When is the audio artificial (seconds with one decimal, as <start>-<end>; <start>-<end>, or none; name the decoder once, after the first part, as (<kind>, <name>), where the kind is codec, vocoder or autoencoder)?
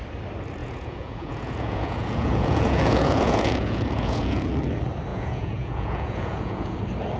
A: 0.6-4.5 (vocoder, Vocos); 5.1-6.8